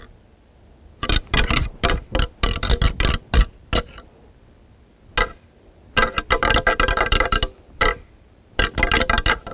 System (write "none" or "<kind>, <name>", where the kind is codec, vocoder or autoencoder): none